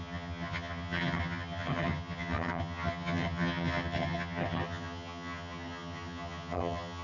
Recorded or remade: remade